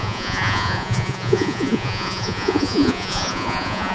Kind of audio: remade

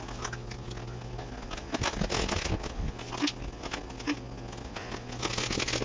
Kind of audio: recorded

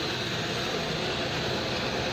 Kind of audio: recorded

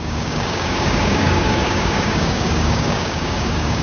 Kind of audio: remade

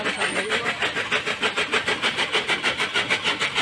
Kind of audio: recorded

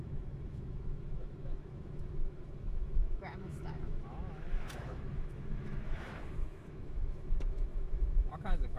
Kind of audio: remade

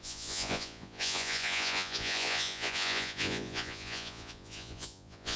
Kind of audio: remade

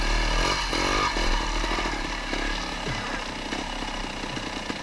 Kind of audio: recorded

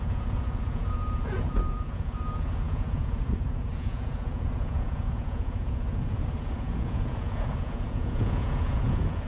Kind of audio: remade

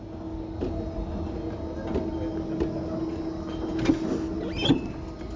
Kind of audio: recorded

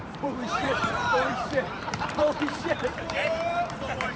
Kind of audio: remade